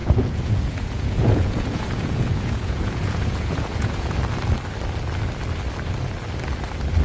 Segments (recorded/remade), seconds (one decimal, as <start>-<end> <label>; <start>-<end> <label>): 0.0-4.2 remade; 4.2-7.0 recorded